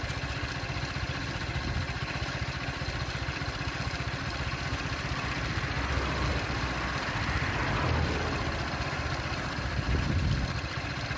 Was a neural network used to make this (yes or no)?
no